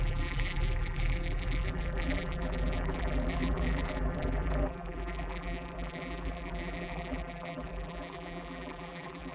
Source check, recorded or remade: remade